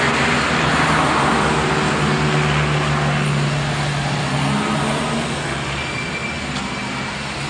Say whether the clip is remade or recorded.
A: recorded